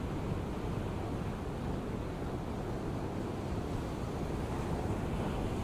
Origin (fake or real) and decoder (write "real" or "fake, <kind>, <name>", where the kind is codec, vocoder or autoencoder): real